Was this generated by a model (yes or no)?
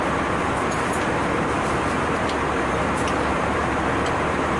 yes